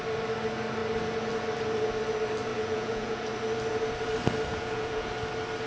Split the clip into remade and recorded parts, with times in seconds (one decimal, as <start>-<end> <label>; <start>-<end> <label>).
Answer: 0.0-2.5 recorded; 2.5-3.3 remade; 3.3-4.5 recorded; 4.5-5.1 remade; 5.1-5.7 recorded